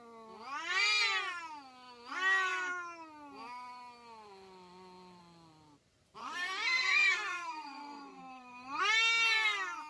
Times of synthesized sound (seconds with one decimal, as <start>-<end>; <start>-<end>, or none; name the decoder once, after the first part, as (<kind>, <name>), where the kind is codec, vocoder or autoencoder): 6.2-8.8 (codec, SNAC)